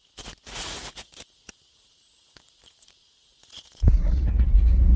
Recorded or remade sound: remade